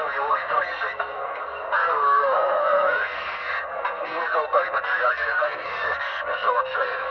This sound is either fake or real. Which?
fake